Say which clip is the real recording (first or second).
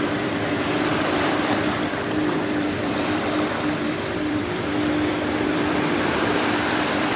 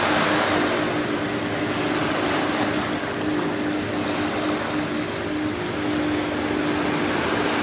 second